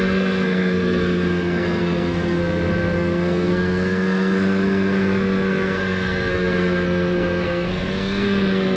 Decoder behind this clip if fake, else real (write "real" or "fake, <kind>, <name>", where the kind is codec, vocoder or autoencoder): fake, codec, SNAC